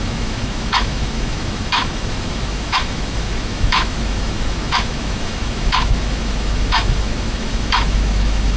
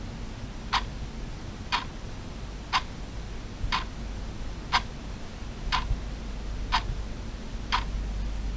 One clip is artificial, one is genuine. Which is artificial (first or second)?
first